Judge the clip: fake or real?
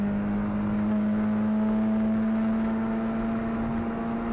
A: real